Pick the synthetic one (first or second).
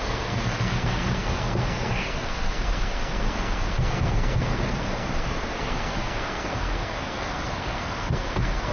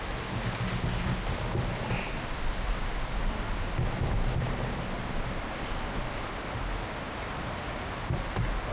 first